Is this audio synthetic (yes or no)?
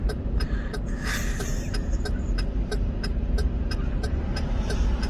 yes